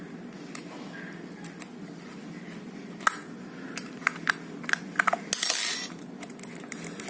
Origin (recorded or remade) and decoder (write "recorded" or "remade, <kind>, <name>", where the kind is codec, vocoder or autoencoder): recorded